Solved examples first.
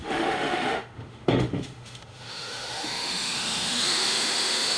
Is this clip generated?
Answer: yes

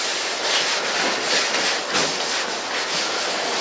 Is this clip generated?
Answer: no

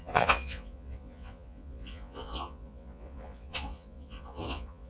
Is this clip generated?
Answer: yes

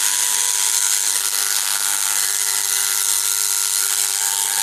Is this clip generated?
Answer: yes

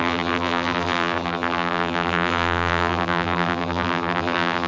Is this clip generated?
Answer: yes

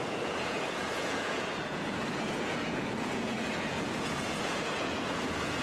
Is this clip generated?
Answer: yes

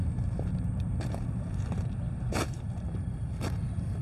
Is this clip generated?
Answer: yes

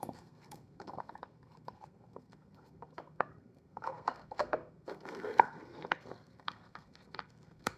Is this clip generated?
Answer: yes